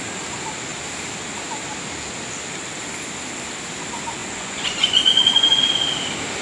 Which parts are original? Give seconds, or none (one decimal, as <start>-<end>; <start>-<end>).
0.0-4.2; 5.6-6.4